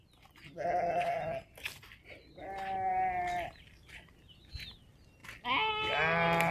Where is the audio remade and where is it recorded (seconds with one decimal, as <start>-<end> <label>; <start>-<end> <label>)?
0.0-6.5 recorded